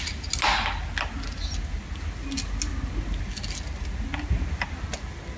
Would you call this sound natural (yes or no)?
yes